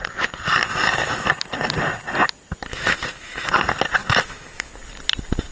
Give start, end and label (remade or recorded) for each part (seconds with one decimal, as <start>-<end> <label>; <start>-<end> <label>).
0.0-0.7 recorded; 0.7-1.3 remade; 1.3-2.7 recorded; 2.7-3.5 remade; 3.5-4.0 recorded; 4.0-4.7 remade; 4.7-5.5 recorded